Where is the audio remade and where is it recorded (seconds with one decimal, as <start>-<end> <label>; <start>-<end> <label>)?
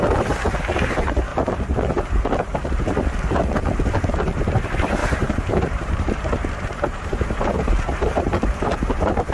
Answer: 0.0-1.3 recorded; 1.3-2.2 remade; 2.2-5.0 recorded; 5.0-9.3 remade